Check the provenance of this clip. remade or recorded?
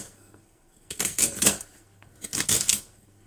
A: remade